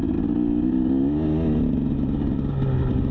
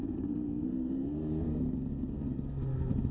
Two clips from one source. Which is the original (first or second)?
first